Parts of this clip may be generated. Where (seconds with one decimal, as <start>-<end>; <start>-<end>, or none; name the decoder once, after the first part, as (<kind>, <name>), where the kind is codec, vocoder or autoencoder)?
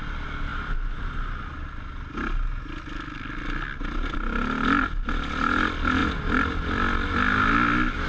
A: none